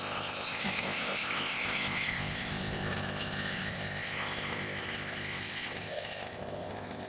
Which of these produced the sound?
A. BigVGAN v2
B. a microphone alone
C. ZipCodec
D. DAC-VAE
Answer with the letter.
C